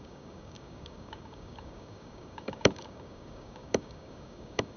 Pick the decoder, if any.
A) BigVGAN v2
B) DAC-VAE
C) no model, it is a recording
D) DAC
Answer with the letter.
D